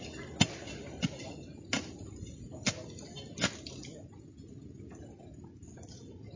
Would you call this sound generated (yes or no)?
no